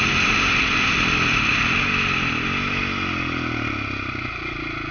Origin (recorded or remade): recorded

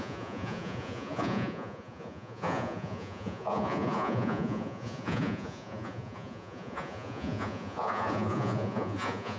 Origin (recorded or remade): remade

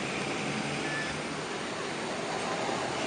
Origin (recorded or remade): recorded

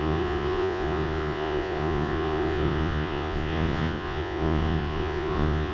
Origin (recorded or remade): remade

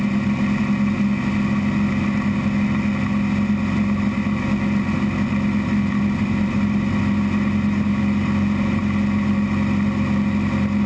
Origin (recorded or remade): recorded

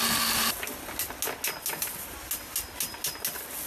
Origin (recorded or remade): recorded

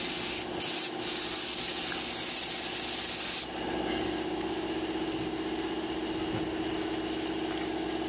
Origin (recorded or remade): recorded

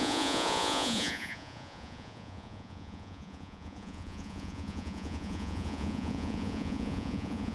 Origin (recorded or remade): remade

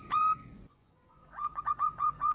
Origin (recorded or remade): remade